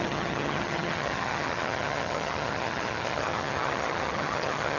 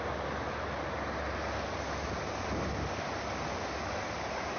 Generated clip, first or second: first